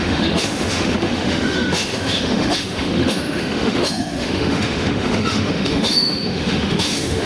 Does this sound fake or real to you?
fake